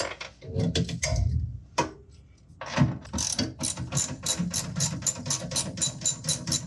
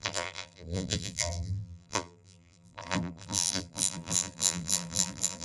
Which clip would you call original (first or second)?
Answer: first